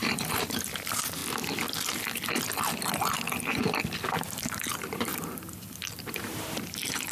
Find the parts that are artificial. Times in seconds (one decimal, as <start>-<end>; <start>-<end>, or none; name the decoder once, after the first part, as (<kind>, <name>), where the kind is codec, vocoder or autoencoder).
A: 0.0-1.2 (vocoder, BigVGAN v2); 4.1-5.1; 6.1-7.1